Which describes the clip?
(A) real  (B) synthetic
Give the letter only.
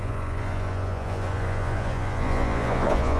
B